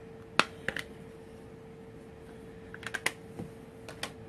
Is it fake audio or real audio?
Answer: real